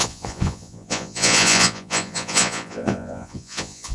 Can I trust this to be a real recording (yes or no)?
no